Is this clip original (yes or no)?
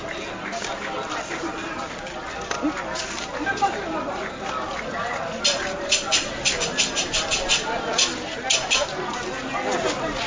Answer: yes